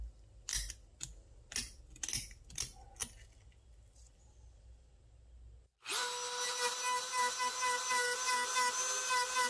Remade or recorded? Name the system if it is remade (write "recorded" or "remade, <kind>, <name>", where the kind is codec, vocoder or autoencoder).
recorded